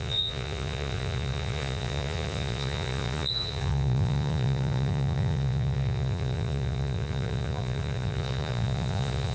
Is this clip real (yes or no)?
no